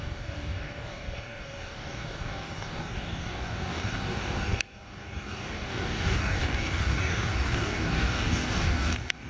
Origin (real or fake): fake